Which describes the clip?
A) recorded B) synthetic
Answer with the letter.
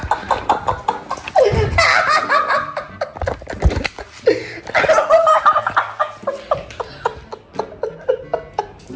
A